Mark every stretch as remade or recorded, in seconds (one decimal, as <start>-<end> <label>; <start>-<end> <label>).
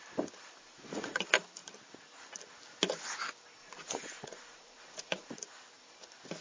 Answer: 0.0-0.6 recorded; 0.6-1.2 remade; 1.2-3.6 recorded; 3.6-5.3 remade; 5.3-6.4 recorded